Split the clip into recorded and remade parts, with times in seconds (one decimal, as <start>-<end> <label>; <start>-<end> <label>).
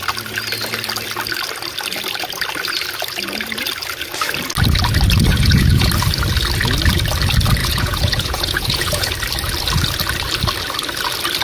0.0-5.3 recorded; 5.3-5.9 remade; 5.9-7.6 recorded; 7.6-9.1 remade; 9.1-11.4 recorded